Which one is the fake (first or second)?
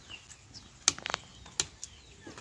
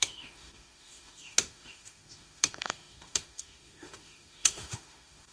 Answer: second